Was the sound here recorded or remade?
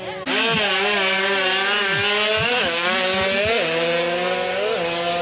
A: recorded